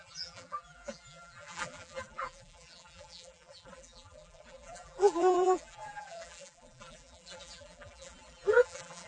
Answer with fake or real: fake